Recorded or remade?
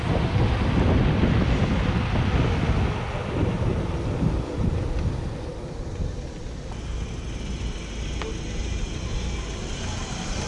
recorded